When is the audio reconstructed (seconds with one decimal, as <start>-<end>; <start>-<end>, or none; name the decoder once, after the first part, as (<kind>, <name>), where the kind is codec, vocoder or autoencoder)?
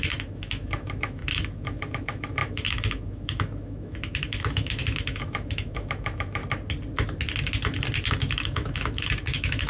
0.0-6.4 (autoencoder, DAC-VAE); 8.1-9.7